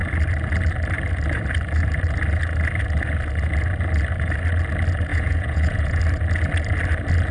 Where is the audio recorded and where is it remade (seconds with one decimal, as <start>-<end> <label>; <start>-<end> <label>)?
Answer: 0.0-5.1 recorded; 5.1-6.0 remade; 6.0-7.3 recorded